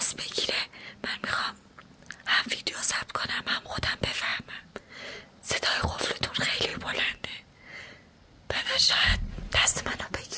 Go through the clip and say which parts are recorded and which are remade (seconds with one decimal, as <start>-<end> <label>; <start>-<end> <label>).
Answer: 0.0-4.3 recorded; 4.3-5.0 remade; 5.0-10.4 recorded